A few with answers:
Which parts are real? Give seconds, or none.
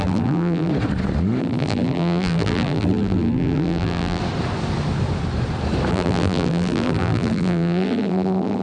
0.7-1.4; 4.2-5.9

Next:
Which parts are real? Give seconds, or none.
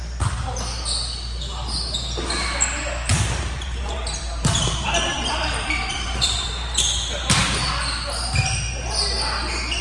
0.0-3.1; 6.5-9.8